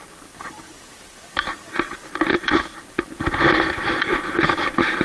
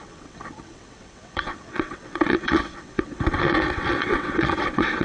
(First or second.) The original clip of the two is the first